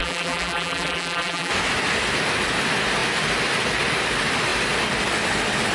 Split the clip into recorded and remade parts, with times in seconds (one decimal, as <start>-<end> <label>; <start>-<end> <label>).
0.0-1.5 remade; 1.5-5.7 recorded